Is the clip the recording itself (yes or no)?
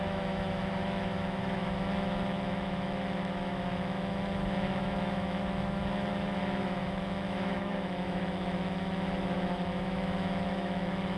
no